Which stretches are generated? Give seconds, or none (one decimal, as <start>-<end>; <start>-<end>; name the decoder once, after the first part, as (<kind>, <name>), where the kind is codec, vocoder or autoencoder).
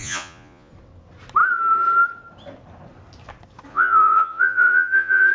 0.0-0.7 (vocoder, Vocos); 3.7-5.3